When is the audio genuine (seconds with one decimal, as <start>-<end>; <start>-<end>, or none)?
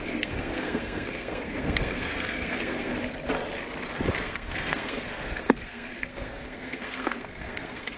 2.9-4.2